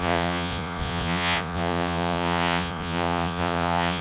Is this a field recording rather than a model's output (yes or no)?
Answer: no